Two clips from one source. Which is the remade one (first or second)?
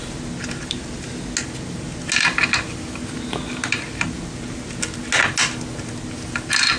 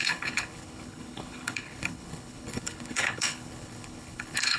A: second